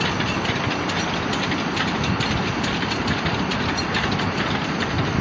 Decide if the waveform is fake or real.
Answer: real